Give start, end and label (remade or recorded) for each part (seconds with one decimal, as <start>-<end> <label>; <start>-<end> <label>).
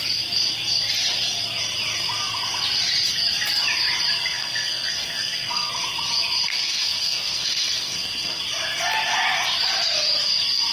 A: 0.0-4.2 recorded; 4.2-5.7 remade; 5.7-6.5 recorded; 6.5-8.4 remade; 8.4-10.7 recorded